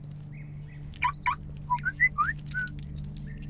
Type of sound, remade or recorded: recorded